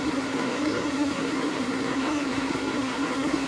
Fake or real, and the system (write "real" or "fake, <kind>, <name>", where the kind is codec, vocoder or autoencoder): fake, codec, SNAC